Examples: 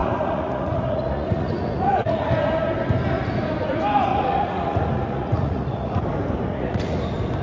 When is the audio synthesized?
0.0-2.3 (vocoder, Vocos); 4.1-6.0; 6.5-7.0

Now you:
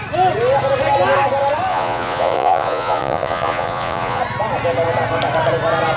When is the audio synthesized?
1.7-4.2 (vocoder, Vocos)

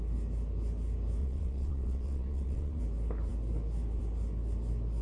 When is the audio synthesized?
1.2-2.8 (vocoder, Vocos)

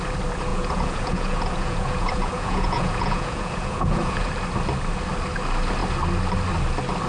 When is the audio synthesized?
0.5-4.3 (vocoder, Vocos)

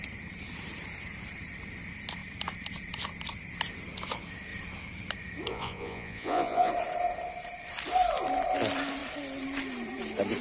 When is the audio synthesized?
5.5-6.7 (vocoder, Vocos)

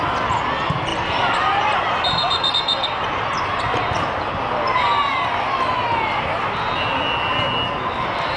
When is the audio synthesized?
none

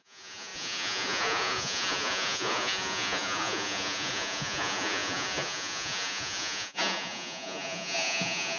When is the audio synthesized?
0.0-8.6 (vocoder, Vocos)

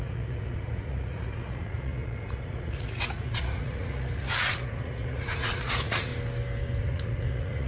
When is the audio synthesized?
0.0-6.1 (vocoder, Vocos); 6.8-7.7